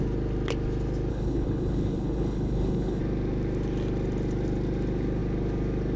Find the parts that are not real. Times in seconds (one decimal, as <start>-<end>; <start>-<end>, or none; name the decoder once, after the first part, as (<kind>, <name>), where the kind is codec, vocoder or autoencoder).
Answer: 1.1-3.0 (codec, HILCodec)